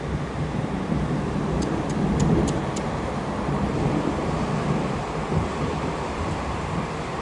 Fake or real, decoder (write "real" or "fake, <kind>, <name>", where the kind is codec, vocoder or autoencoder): fake, vocoder, BigVGAN v2